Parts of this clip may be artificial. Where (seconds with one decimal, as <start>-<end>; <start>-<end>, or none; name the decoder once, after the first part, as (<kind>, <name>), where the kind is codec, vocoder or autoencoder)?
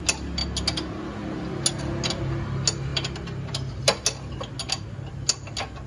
none